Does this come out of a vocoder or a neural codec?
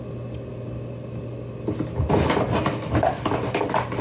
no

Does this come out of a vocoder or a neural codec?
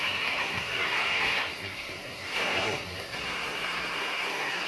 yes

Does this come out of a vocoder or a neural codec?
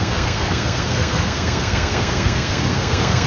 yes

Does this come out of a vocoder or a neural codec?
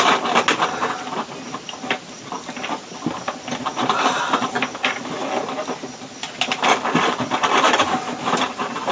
no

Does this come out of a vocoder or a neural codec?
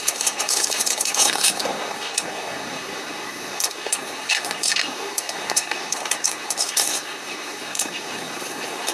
yes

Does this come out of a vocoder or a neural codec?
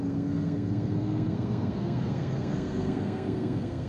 yes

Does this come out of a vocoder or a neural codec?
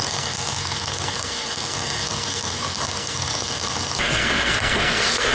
yes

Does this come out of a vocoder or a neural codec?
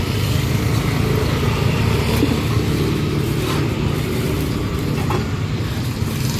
no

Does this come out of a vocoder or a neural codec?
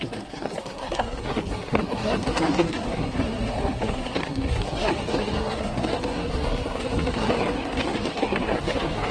yes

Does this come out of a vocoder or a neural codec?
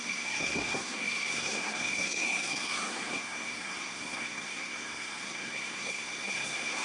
yes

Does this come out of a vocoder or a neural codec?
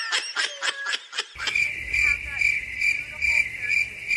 no